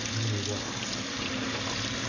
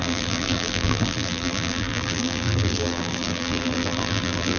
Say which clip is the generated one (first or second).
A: second